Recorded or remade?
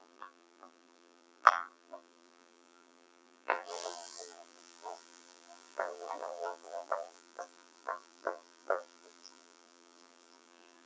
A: remade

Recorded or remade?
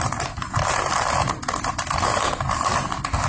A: recorded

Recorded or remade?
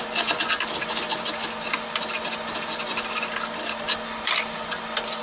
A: recorded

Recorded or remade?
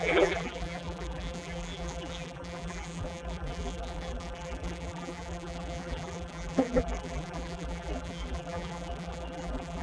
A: remade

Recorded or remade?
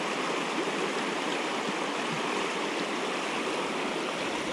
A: recorded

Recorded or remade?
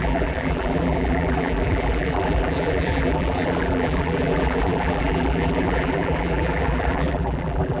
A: remade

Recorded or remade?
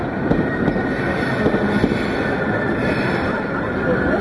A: remade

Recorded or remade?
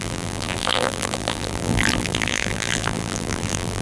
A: remade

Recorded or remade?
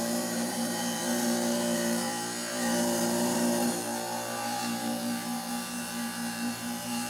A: remade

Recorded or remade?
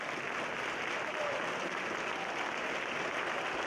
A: recorded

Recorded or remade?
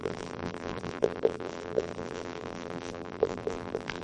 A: remade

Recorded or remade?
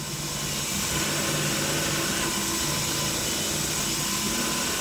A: recorded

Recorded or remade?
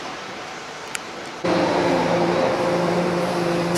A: remade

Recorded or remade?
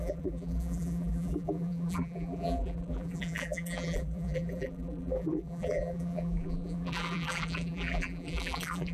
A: remade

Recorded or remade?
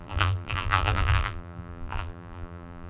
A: remade